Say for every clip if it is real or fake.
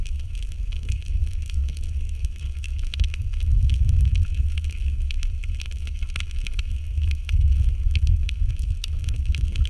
fake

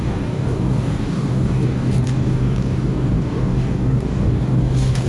fake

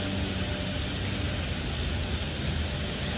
real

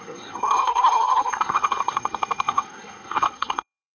fake